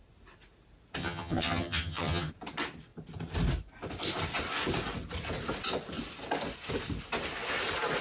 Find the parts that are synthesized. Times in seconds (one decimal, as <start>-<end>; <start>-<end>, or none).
1.0-2.3